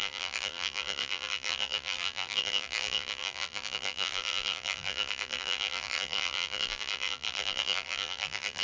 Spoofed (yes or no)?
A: yes